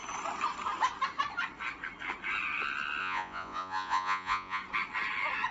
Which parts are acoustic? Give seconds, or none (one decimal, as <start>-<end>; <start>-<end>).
0.0-3.0; 4.6-5.5